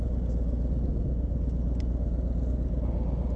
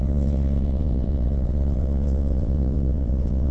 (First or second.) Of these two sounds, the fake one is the second